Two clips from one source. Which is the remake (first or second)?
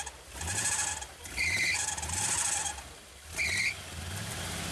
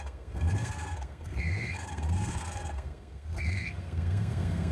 second